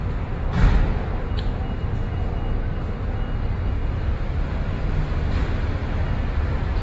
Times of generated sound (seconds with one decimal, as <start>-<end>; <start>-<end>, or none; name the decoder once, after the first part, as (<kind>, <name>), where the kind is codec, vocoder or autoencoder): 3.8-4.4 (vocoder, BigVGAN v2)